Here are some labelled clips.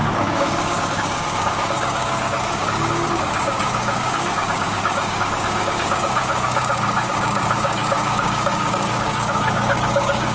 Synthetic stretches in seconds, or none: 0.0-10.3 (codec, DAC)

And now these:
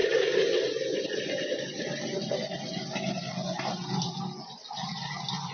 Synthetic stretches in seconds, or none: none

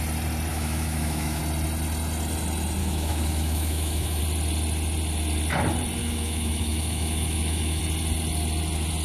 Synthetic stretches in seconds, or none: 0.5-1.4 (autoencoder, DAC-VAE); 2.8-4.2; 6.0-7.8

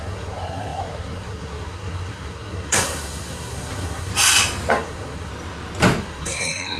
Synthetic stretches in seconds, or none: 0.0-4.1 (codec, SNAC); 4.7-5.3; 6.0-6.8

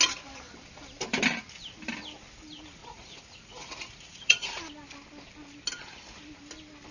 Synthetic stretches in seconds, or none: 2.8-4.6 (vocoder, Vocos)

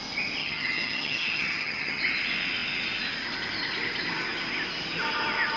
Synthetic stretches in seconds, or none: 0.4-2.0 (vocoder, HiFi-GAN)